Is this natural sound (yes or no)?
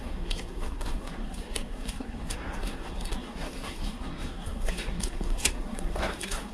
no